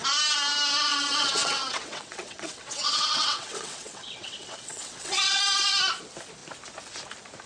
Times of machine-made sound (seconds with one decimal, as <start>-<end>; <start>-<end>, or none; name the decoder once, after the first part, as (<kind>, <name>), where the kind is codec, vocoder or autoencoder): 0.9-5.4 (vocoder, WaveNeXt)